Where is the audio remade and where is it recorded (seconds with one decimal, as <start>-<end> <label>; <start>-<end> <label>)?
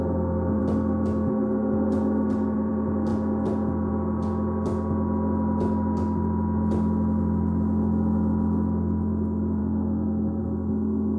0.0-9.6 recorded; 9.6-10.4 remade; 10.4-11.2 recorded